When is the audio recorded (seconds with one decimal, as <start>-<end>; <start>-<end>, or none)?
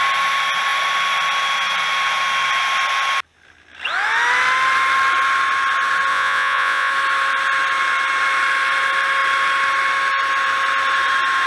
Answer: 0.0-6.1; 6.9-11.5